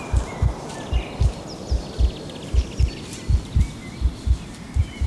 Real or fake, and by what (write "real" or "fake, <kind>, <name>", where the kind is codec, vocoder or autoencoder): real